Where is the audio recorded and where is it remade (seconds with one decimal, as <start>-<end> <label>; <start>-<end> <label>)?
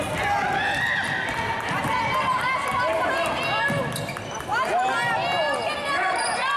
0.0-6.6 recorded